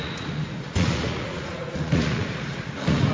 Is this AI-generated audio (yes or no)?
yes